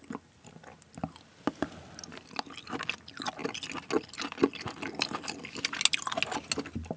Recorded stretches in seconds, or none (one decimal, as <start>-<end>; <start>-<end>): 0.0-7.0